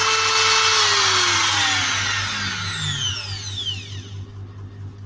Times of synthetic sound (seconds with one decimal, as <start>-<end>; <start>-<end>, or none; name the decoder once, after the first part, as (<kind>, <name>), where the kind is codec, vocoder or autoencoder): none

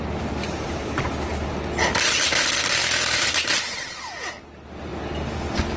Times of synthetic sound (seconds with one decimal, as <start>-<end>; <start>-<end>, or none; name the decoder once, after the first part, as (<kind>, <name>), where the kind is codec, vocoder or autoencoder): 0.4-1.1 (vocoder, BigVGAN v2); 2.8-4.3

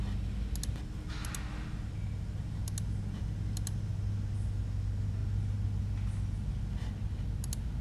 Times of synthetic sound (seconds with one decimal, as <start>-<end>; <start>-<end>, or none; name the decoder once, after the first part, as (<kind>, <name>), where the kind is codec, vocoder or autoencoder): none